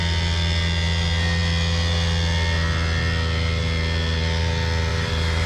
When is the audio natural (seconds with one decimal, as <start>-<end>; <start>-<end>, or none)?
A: 0.0-4.9